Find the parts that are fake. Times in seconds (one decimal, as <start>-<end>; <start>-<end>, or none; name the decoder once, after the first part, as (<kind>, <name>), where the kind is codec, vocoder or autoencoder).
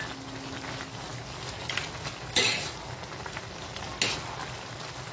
none